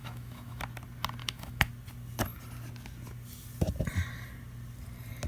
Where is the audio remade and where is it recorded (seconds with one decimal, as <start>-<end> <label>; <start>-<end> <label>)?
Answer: 0.0-0.6 remade; 0.6-1.2 recorded; 1.2-1.7 remade; 1.7-5.3 recorded